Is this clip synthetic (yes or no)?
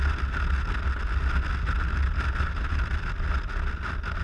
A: no